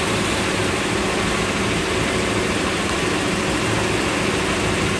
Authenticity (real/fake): real